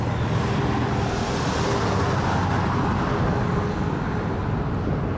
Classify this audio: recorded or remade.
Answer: recorded